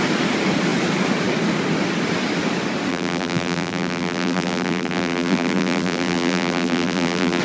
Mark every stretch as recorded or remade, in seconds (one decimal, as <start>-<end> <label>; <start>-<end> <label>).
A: 0.0-2.9 recorded; 2.9-7.4 remade